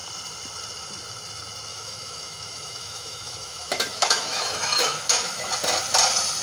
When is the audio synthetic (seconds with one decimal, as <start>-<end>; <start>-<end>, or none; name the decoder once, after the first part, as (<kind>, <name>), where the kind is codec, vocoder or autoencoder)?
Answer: 1.7-5.5 (autoencoder, DAC-VAE)